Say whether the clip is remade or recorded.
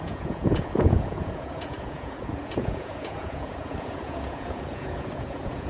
remade